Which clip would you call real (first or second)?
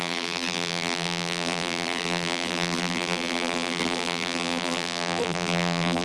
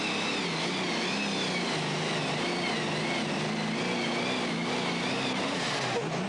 second